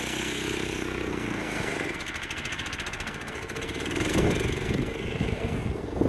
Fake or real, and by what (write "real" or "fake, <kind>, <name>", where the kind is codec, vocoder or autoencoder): fake, codec, SNAC